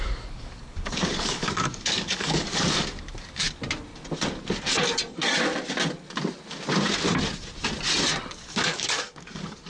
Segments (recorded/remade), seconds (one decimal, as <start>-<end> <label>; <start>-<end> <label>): 0.0-3.6 remade; 3.6-8.3 recorded; 8.3-9.7 remade